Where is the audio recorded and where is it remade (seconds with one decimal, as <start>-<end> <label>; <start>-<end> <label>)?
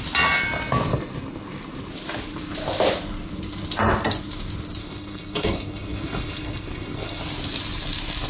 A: 0.0-4.8 recorded; 4.8-7.2 remade; 7.2-8.3 recorded